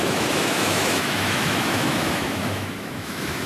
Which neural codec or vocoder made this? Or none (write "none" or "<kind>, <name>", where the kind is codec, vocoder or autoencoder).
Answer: autoencoder, DAC-VAE